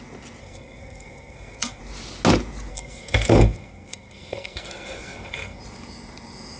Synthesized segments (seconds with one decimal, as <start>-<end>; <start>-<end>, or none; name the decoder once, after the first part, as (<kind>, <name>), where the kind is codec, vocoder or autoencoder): 0.4-1.8 (codec, SNAC); 2.7-5.6